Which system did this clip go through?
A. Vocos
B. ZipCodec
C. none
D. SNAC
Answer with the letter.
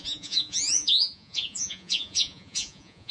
A